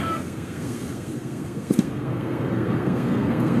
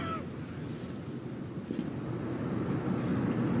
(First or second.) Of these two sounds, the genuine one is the second